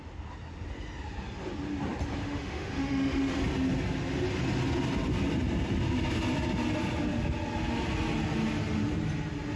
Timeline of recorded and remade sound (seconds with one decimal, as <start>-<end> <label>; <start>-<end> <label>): 0.0-2.2 recorded; 2.2-3.4 remade; 3.4-9.6 recorded